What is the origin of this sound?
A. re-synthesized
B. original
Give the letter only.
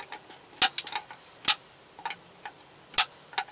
B